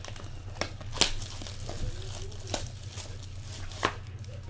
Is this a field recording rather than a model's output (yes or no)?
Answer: yes